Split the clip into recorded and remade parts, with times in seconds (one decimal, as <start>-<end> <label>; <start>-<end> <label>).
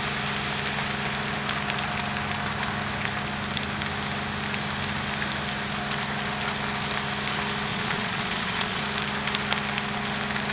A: 0.0-7.7 recorded; 7.7-8.8 remade; 8.8-10.5 recorded